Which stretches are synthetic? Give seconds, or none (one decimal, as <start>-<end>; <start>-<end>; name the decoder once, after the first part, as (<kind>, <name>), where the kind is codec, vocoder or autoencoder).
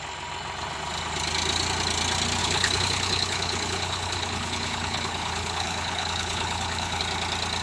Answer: 2.4-7.0 (codec, HILCodec)